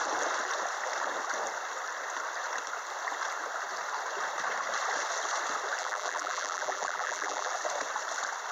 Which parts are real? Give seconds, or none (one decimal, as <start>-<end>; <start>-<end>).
0.0-5.8; 7.5-8.5